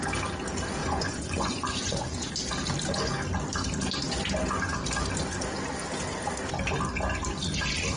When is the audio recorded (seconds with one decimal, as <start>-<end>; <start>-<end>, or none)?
0.0-0.8; 2.3-8.0